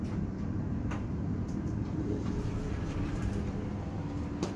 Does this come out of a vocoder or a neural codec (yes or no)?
yes